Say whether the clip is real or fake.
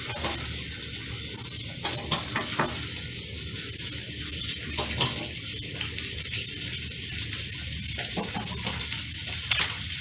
real